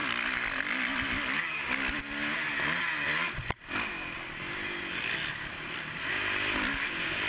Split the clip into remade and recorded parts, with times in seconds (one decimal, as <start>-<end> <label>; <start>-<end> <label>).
0.0-7.3 recorded